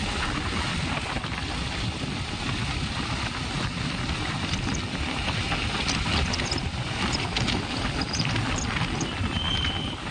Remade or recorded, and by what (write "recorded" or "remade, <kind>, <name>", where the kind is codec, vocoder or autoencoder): recorded